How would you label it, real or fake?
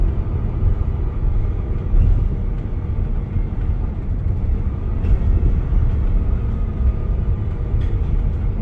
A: real